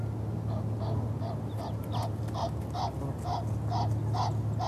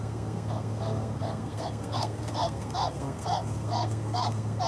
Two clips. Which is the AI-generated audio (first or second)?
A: second